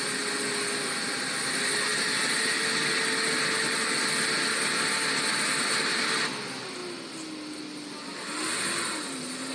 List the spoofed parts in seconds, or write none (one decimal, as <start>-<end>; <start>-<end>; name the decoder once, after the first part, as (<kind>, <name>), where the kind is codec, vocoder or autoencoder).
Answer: none